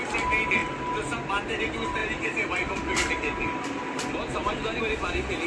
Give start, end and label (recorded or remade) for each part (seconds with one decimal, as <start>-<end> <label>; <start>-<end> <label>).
0.0-5.5 recorded